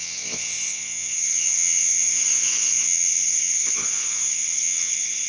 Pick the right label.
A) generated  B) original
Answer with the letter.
A